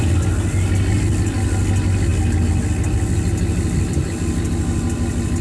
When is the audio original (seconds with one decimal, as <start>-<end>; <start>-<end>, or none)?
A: 0.0-5.4